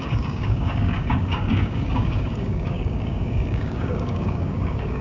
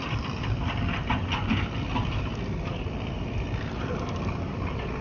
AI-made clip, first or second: first